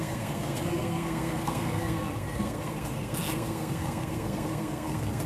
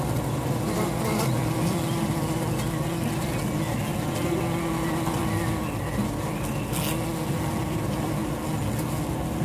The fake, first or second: first